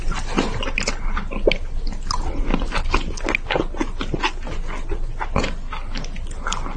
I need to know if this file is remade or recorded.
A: recorded